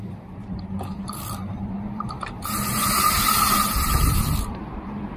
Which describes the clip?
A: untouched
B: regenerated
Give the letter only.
B